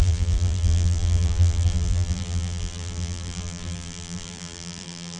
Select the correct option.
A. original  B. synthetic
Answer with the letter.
B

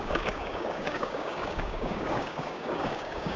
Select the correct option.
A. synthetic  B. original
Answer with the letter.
A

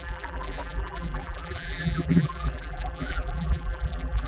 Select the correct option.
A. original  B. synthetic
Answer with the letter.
B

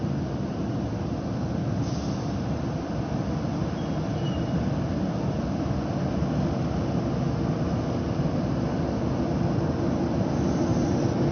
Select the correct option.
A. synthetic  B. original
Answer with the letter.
B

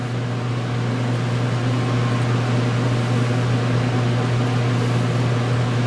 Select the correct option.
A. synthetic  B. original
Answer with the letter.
B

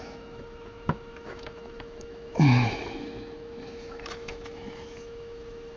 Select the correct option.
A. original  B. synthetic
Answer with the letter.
B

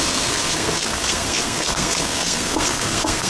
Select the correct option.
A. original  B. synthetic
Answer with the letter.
B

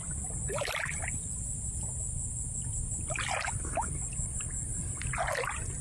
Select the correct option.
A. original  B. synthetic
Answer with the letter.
A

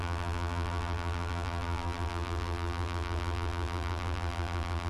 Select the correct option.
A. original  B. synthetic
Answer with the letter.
B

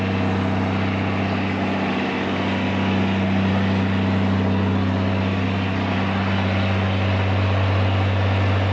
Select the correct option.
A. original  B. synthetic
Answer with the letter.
A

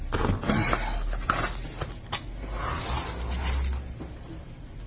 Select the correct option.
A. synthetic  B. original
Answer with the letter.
B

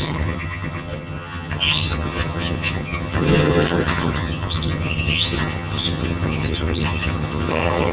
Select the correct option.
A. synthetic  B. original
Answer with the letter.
A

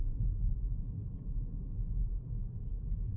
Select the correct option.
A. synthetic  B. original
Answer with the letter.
B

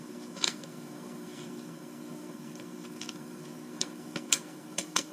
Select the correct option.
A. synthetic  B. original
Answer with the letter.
A